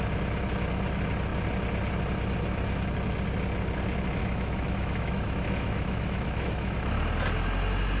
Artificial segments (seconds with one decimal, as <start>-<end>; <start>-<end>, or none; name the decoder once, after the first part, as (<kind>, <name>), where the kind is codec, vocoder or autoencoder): 4.2-7.0 (autoencoder, DAC-VAE)